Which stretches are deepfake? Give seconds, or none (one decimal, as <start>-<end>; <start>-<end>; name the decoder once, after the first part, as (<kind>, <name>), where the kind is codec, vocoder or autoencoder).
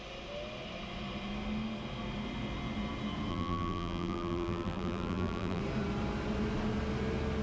3.3-5.6 (vocoder, BigVGAN v2)